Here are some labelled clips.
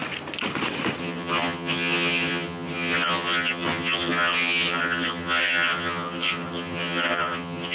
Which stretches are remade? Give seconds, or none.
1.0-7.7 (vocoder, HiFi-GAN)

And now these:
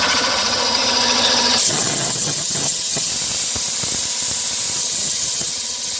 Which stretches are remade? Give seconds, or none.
0.0-3.1 (vocoder, HiFi-GAN); 4.8-6.0

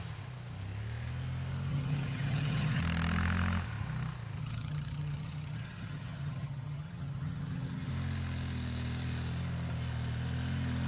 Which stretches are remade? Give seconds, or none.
1.7-2.8 (vocoder, HiFi-GAN); 4.4-7.9

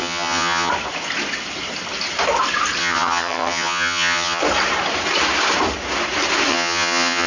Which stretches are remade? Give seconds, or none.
0.0-0.7 (vocoder, HiFi-GAN); 2.8-4.4; 6.5-7.3